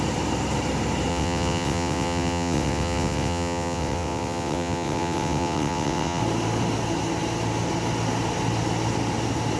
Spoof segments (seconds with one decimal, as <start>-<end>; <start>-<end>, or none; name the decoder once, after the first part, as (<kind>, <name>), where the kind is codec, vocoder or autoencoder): 1.1-6.2 (vocoder, WaveNeXt)